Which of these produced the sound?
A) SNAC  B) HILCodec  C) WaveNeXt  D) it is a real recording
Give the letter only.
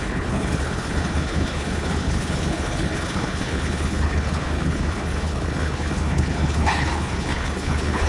B